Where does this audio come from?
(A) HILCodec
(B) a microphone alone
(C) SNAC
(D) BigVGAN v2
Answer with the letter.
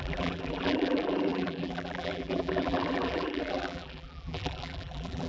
D